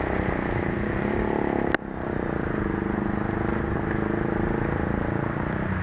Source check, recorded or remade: recorded